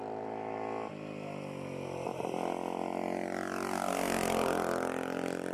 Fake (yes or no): no